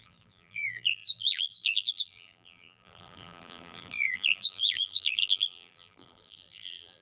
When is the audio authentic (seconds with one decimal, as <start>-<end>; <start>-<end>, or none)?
none